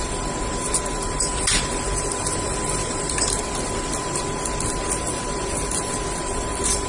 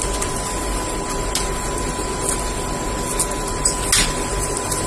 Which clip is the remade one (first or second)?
first